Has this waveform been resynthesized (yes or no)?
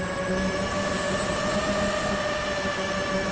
no